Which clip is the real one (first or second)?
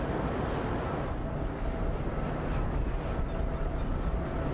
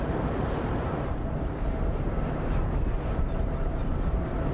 first